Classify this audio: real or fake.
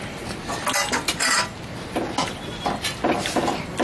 real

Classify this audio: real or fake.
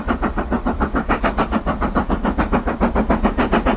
real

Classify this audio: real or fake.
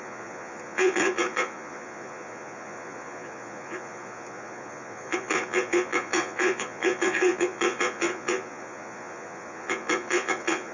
fake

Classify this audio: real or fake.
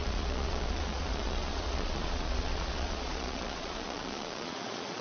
fake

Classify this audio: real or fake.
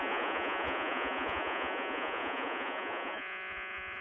fake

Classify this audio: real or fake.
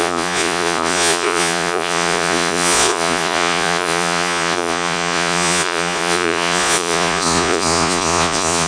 fake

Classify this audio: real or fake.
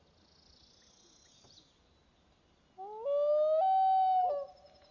real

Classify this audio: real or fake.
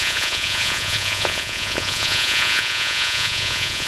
fake